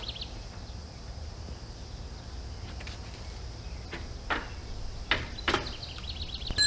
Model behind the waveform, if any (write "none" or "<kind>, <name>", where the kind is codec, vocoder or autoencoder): none